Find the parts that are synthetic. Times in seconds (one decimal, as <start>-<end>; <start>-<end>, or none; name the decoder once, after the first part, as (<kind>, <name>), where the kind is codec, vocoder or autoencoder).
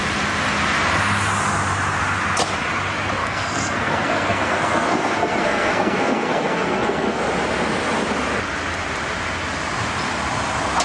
3.2-7.2 (codec, SNAC)